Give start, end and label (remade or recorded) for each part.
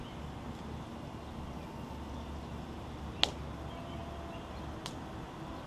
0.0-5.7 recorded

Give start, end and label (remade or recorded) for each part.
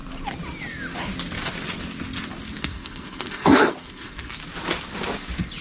0.0-2.6 recorded; 2.6-4.4 remade; 4.4-5.6 recorded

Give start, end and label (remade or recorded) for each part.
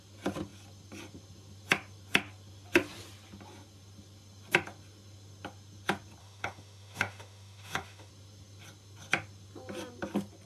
0.0-6.2 recorded; 6.2-8.1 remade; 8.1-10.5 recorded